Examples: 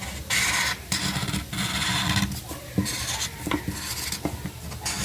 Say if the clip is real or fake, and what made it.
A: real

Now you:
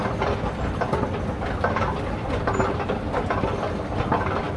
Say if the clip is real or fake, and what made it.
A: real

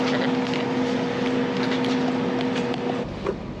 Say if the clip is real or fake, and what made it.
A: real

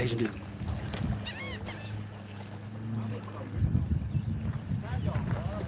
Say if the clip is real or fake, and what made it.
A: real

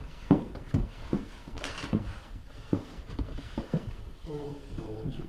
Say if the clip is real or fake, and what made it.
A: fake, codec, SNAC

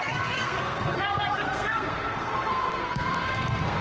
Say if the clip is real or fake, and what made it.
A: fake, codec, SNAC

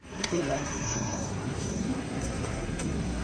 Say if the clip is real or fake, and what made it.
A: fake, codec, SNAC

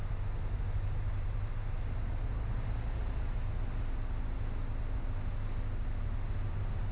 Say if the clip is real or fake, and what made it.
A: real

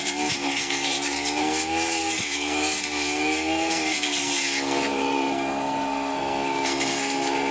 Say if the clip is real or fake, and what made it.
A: fake, codec, SNAC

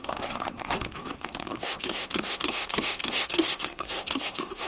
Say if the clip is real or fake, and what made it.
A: fake, codec, SNAC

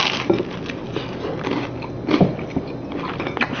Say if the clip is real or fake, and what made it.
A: real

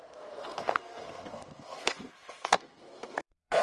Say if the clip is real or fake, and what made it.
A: fake, codec, SNAC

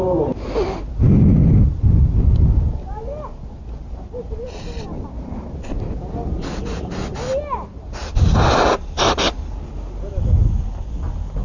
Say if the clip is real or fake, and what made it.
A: real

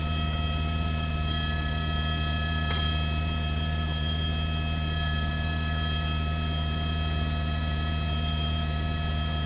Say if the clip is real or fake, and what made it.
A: real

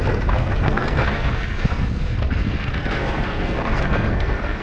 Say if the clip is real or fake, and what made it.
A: fake, codec, SNAC